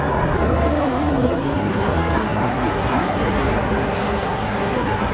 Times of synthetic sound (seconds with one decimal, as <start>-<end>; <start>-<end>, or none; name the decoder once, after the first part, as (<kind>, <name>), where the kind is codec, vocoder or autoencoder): 0.0-5.1 (codec, SNAC)

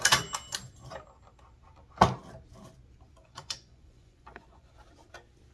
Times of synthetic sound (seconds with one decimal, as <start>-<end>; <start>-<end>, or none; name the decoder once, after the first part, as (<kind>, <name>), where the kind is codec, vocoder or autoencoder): 3.2-4.7 (vocoder, Vocos)